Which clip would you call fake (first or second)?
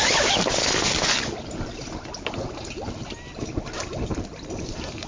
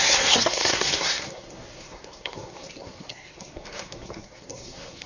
second